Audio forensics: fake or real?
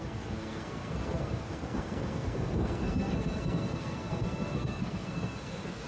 fake